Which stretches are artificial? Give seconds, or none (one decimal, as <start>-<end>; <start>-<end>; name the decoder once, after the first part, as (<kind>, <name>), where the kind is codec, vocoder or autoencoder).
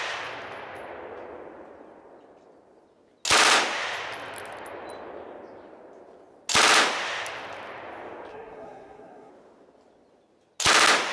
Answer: 8.3-9.3 (codec, SNAC)